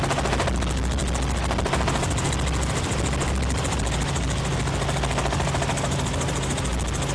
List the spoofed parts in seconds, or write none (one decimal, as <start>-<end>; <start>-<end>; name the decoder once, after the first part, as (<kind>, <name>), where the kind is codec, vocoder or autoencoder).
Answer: none